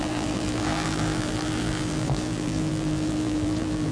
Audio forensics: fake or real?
fake